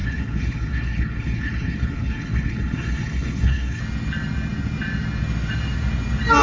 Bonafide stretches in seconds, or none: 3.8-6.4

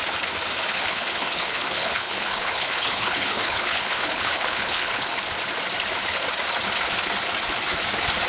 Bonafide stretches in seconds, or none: 0.0-0.7; 5.2-8.3

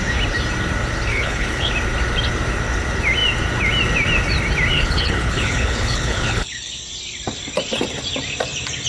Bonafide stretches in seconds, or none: 0.0-1.1; 1.7-4.7; 6.8-8.9

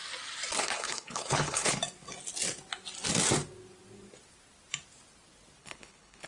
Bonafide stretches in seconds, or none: 0.0-0.6; 1.8-5.6

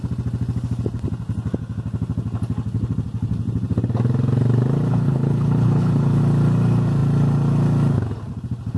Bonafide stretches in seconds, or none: 0.0-4.9; 6.2-8.8